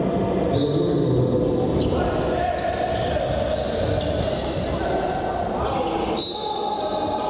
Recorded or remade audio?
recorded